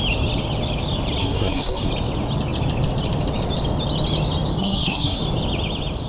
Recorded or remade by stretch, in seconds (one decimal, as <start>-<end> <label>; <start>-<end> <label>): 0.0-1.2 recorded; 1.2-1.9 remade; 1.9-4.6 recorded; 4.6-5.2 remade; 5.2-6.1 recorded